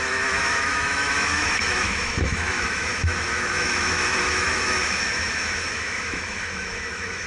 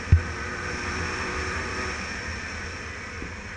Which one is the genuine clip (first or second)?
second